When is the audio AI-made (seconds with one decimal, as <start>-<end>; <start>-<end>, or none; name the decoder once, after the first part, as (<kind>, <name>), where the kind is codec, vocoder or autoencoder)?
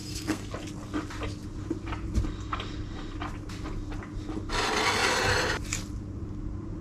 0.0-0.5 (codec, SNAC)